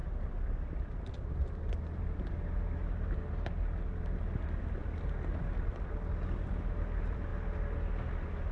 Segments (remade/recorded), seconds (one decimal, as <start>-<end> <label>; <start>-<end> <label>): 0.0-8.5 recorded